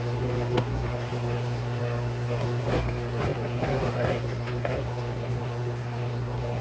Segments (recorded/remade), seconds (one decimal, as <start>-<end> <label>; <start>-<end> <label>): 0.0-6.6 remade